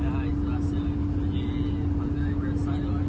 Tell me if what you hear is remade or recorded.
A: recorded